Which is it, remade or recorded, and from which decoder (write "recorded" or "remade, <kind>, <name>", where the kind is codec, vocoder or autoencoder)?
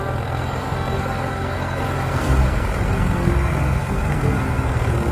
remade, codec, SNAC